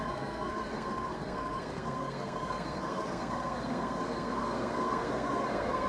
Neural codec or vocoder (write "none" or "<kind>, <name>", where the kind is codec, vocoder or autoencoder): codec, SNAC